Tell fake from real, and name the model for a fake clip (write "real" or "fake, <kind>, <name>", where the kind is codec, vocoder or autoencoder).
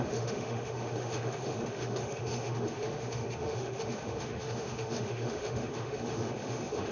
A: fake, autoencoder, DAC-VAE